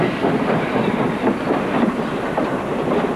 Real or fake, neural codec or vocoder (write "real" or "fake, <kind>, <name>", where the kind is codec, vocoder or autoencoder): real